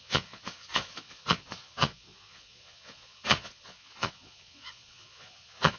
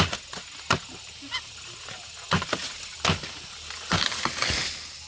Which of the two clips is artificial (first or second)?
first